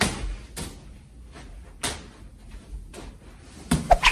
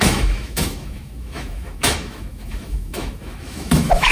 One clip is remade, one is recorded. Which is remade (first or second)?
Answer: second